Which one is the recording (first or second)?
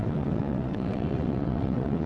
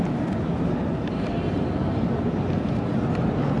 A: second